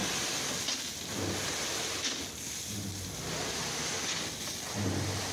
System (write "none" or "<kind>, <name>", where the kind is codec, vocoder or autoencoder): none